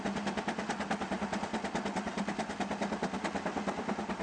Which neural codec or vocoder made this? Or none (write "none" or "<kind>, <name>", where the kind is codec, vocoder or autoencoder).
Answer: none